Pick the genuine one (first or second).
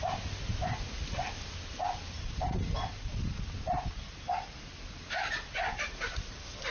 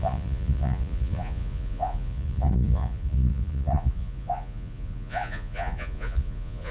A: first